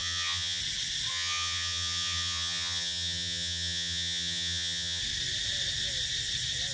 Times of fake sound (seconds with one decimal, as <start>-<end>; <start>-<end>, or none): 0.0-0.6; 1.1-5.0